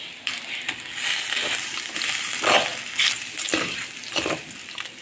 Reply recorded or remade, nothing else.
recorded